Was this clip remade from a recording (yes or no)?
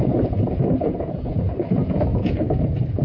yes